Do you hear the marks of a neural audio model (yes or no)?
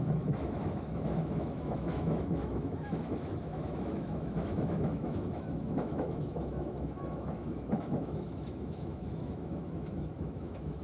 yes